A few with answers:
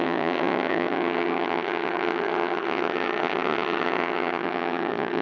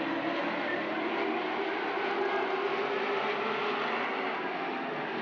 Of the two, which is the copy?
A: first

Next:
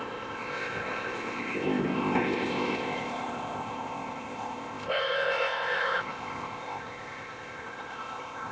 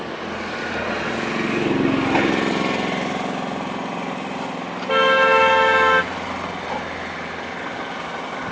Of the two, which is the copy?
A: first